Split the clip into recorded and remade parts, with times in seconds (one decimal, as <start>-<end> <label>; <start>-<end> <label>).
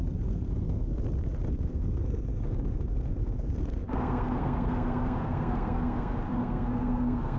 0.0-0.9 remade; 0.9-1.5 recorded; 1.5-7.4 remade